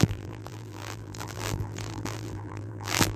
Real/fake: fake